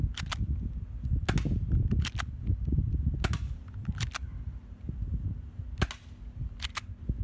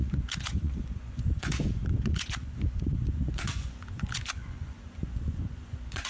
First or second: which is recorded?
first